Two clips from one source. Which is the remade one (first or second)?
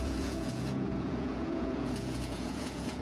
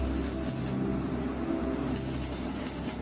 first